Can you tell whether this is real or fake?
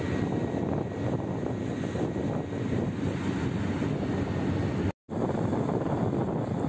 real